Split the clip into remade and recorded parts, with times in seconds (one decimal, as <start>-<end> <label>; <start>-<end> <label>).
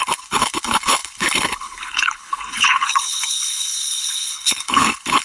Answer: 0.0-5.2 remade